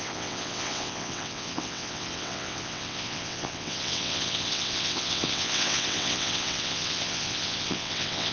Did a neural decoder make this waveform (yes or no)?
yes